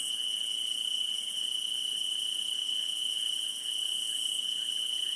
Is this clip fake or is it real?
fake